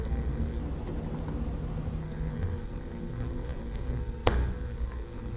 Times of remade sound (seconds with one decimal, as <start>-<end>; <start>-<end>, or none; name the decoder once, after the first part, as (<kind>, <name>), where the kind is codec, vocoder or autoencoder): 0.0-0.6 (codec, SNAC); 2.0-5.4